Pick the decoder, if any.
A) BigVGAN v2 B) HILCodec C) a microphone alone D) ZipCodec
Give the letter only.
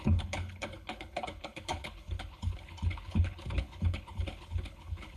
B